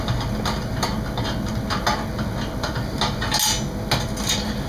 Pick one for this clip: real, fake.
real